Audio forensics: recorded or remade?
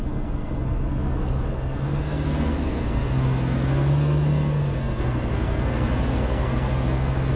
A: remade